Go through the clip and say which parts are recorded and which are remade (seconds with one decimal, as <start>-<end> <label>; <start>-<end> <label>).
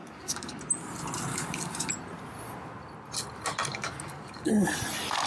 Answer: 0.0-0.6 remade; 0.6-1.3 recorded; 1.3-1.9 remade; 1.9-3.7 recorded; 3.7-4.5 remade; 4.5-5.3 recorded